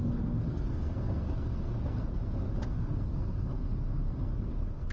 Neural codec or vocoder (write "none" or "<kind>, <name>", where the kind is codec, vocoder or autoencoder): codec, SNAC